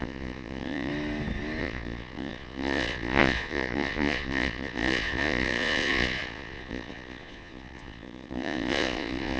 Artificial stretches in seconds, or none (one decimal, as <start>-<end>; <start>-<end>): 0.0-0.9; 1.6-9.4